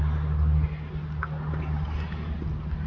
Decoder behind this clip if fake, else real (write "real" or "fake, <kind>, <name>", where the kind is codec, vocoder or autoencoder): real